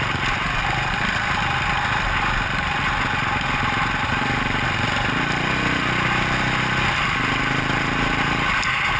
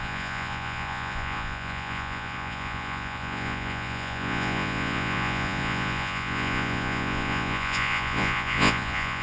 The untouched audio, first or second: first